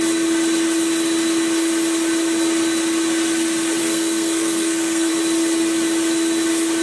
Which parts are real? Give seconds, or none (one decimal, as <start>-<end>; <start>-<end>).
0.0-3.8; 5.1-6.8